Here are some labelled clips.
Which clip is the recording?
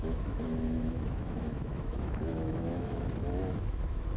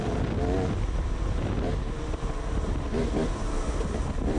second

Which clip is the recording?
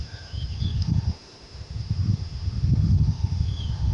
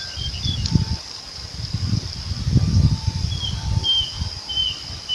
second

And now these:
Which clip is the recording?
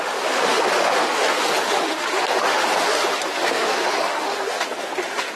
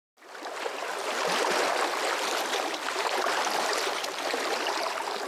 second